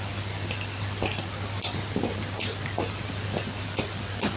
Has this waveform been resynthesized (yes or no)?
no